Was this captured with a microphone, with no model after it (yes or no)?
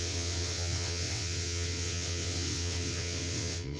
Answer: no